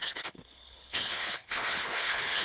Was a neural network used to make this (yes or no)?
yes